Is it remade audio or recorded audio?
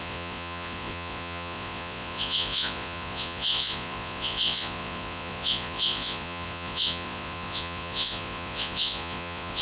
remade